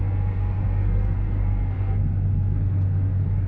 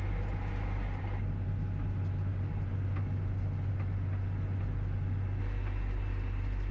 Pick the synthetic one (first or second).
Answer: first